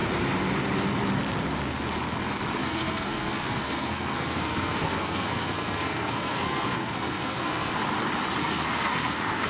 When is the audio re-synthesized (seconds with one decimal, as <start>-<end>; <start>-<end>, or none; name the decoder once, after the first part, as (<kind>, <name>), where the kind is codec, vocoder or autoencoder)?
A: 2.6-7.8 (codec, SNAC); 8.4-9.5